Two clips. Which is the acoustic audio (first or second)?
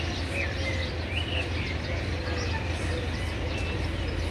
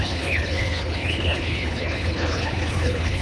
first